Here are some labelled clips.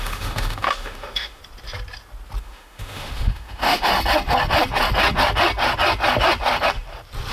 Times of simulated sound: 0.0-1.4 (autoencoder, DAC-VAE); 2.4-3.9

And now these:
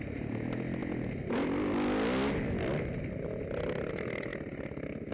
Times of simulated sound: none

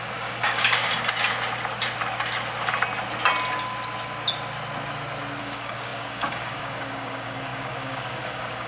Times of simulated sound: 0.0-0.9 (codec, DAC); 5.4-8.7